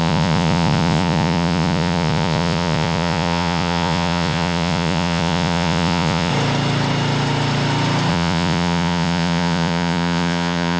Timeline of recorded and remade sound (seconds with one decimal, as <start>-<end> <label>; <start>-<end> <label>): 0.0-6.3 remade; 6.3-8.1 recorded; 8.1-10.8 remade